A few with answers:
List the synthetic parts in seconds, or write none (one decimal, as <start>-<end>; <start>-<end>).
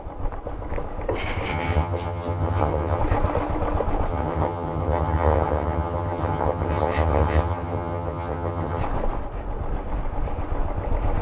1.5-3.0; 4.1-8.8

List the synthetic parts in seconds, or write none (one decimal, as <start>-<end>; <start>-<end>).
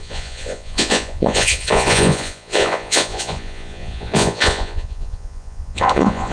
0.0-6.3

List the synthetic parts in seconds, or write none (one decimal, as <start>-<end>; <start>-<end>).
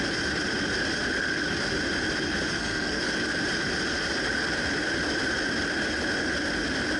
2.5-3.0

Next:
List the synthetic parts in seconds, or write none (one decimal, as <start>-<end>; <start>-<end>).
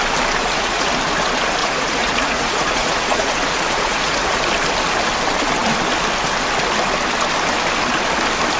0.4-0.9; 1.6-4.4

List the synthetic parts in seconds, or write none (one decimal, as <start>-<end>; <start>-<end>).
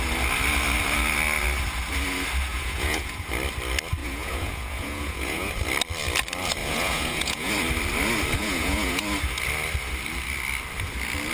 2.5-3.3; 4.0-5.5; 6.6-7.5; 8.4-9.0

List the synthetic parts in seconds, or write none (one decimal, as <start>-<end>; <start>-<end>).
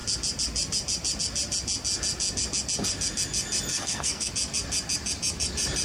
3.7-4.3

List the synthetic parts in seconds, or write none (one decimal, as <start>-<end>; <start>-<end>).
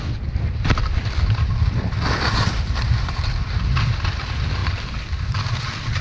none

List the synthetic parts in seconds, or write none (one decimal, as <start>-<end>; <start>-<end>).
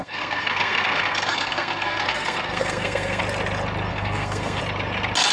0.0-3.2; 3.9-4.6